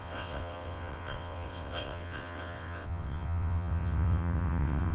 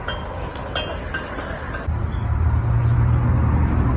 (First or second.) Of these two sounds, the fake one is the first